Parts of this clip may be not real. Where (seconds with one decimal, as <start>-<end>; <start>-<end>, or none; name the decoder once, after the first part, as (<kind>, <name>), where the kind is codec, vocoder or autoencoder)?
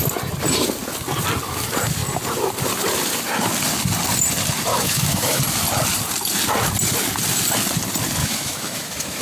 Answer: 4.7-5.4 (autoencoder, DAC-VAE); 8.2-9.2